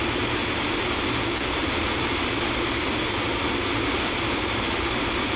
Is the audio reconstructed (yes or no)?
yes